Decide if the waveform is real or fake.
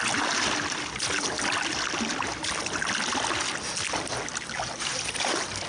real